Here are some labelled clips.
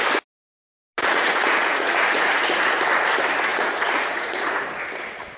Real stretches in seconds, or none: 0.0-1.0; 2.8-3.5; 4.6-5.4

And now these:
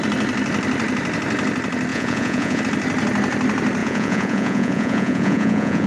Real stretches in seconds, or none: 0.0-1.9; 2.6-3.8

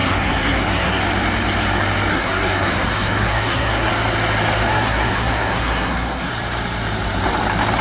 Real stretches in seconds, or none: 1.0-2.1; 3.9-4.7; 6.3-7.8

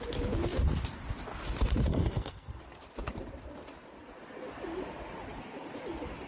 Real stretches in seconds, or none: 0.0-1.9; 2.6-6.3

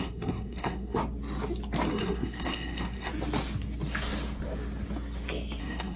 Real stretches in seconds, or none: 1.0-1.9; 3.1-5.6

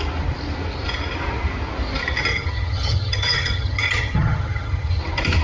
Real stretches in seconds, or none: 0.0-2.3; 5.0-5.4

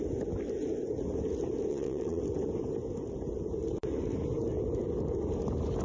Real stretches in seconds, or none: 0.0-1.7; 2.2-5.8